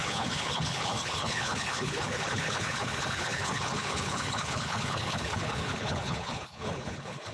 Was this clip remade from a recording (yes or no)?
yes